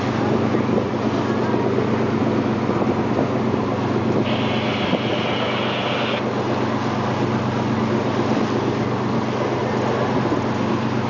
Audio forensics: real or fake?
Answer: real